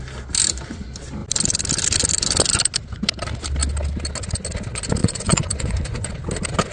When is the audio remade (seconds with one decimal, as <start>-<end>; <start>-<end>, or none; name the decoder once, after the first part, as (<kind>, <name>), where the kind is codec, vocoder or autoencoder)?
5.0-6.1 (vocoder, Vocos)